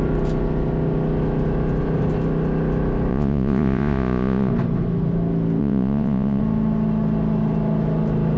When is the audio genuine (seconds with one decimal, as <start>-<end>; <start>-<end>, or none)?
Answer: 0.0-3.1; 4.5-5.6; 6.4-8.4